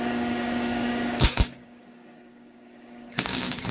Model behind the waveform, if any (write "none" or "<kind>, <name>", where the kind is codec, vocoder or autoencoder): codec, DAC